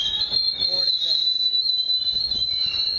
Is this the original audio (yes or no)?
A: yes